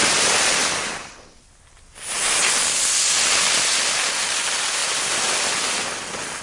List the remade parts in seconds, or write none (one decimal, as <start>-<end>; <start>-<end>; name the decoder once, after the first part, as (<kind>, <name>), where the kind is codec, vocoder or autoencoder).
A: 4.8-5.3 (vocoder, BigVGAN v2)